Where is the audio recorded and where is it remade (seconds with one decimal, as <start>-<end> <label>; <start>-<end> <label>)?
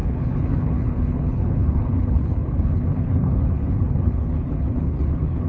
0.0-5.5 remade